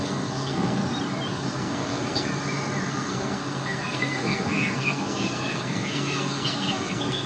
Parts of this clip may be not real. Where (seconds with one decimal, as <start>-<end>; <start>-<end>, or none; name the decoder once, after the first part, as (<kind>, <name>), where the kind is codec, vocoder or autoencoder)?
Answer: 0.0-0.8 (codec, SNAC); 1.3-2.3; 2.9-7.3